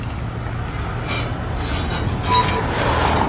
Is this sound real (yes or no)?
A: yes